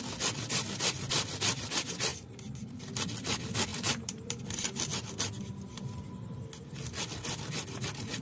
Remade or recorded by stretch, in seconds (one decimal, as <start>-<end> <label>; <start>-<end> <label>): 0.0-2.1 recorded; 2.1-2.9 remade; 2.9-3.7 recorded; 3.7-4.4 remade; 4.4-8.2 recorded